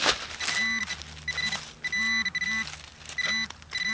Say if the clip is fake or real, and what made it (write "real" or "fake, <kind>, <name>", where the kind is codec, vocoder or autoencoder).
real